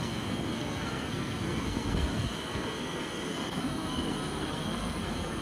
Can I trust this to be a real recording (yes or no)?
no